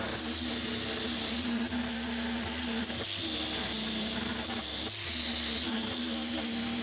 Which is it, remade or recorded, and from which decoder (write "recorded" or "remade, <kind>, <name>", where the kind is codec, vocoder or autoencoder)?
recorded